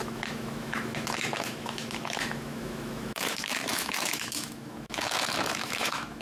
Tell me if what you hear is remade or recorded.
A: remade